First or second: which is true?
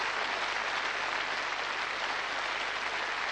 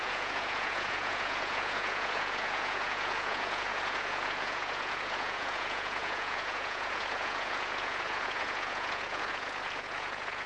first